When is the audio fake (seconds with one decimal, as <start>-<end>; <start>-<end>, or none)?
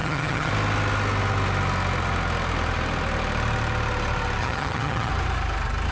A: 0.0-0.5; 4.4-5.1